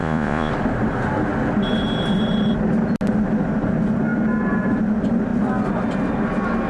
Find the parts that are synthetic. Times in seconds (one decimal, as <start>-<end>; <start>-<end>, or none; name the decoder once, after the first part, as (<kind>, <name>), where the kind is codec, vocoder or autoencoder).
0.0-0.5 (vocoder, Vocos)